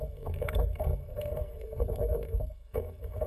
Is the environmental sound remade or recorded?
remade